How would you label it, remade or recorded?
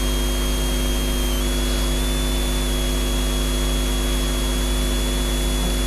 recorded